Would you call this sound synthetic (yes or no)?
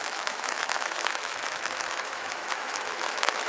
yes